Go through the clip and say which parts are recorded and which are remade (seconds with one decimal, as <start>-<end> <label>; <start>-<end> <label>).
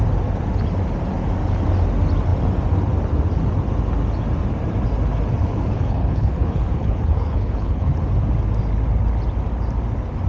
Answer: 0.0-5.4 recorded; 5.4-8.0 remade; 8.0-10.3 recorded